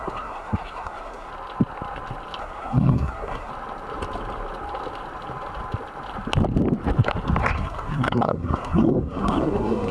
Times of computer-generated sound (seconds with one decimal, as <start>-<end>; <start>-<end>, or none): 0.0-1.3; 2.4-3.5; 7.4-9.9